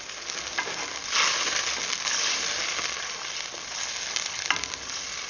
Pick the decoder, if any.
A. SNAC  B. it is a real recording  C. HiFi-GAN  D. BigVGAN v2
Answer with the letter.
D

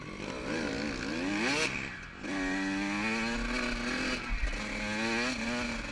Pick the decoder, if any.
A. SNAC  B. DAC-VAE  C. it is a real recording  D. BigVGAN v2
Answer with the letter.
C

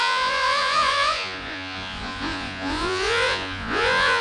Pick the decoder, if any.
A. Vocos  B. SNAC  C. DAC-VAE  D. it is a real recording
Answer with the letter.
A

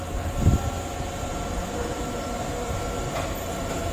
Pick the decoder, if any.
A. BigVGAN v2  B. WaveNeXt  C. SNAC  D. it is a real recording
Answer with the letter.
D